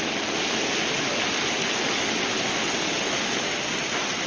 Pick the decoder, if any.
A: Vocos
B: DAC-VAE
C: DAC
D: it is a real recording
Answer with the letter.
D